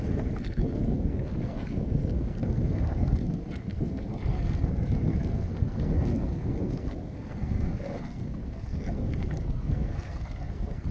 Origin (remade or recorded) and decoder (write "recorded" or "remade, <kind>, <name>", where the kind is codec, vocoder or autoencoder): remade, codec, SNAC